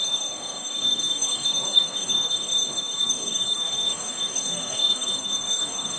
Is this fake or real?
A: fake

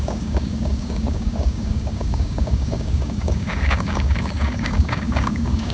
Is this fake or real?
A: fake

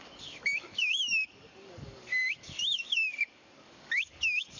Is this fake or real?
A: fake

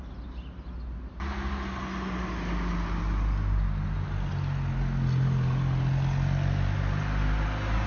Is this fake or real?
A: real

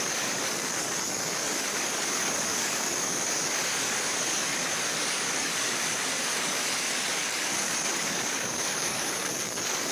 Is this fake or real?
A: fake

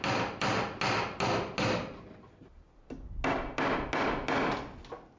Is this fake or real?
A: real